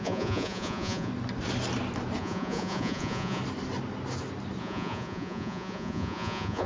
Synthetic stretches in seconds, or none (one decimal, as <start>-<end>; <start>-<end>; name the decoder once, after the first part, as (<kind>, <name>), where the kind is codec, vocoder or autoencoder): 0.0-1.1 (vocoder, Vocos); 2.2-3.4; 4.6-6.7